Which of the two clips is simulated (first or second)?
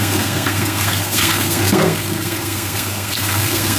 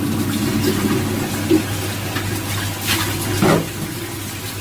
first